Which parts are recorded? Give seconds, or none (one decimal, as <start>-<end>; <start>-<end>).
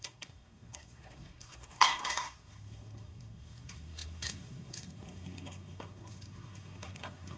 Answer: none